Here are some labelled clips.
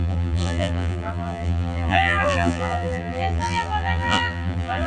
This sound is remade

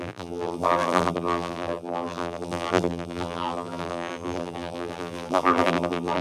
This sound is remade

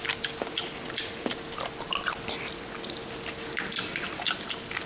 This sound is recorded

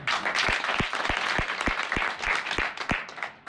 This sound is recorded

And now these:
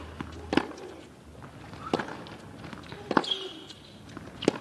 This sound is recorded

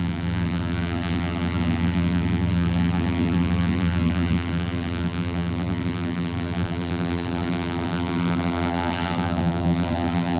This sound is remade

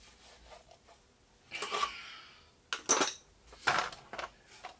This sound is recorded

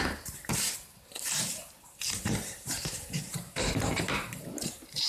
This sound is remade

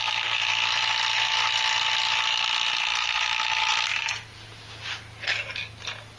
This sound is recorded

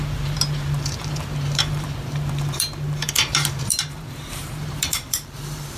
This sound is remade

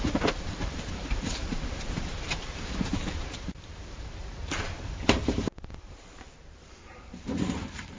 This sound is remade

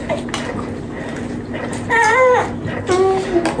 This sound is recorded